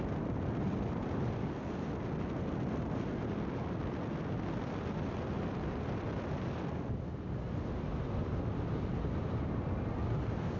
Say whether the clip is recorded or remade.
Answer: recorded